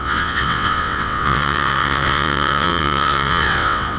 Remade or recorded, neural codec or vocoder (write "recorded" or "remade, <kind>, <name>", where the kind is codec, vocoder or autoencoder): remade, vocoder, WaveNeXt